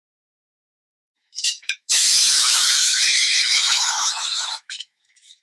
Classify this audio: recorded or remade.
remade